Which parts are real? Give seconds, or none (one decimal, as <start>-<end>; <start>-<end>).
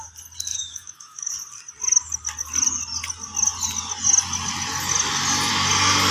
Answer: 0.0-0.5; 1.3-6.1